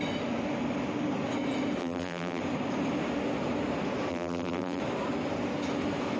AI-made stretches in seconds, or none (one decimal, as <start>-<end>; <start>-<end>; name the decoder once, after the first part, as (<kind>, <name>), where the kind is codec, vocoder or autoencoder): 1.8-2.4 (vocoder, BigVGAN v2); 4.1-4.8